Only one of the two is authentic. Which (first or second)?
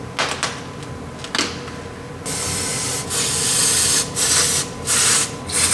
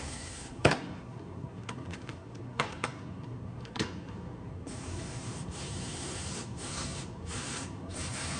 first